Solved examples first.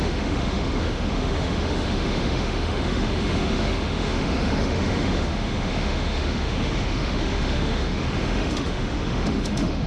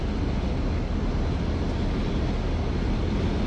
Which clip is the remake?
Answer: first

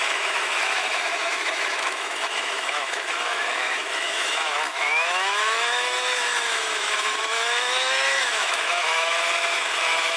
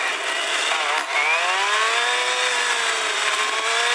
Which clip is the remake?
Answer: first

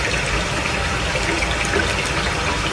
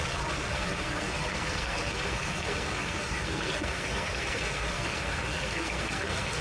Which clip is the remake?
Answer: second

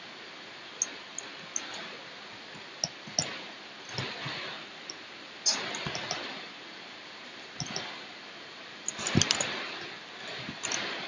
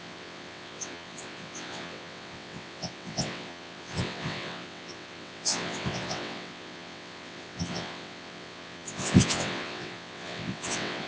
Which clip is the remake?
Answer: second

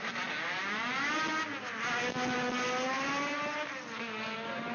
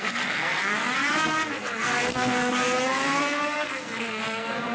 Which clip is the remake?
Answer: second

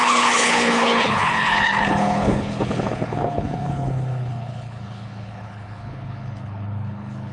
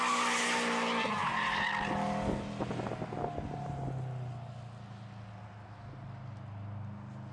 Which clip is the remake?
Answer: first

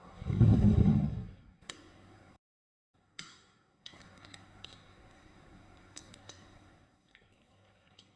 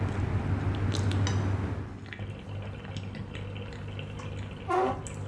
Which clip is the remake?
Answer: first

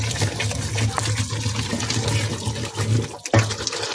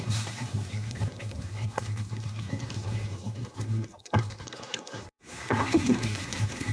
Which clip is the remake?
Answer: second